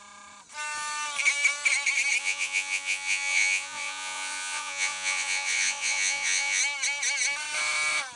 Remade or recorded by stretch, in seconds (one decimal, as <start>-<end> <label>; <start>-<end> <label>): 0.0-2.2 recorded; 2.2-6.6 remade; 6.6-8.2 recorded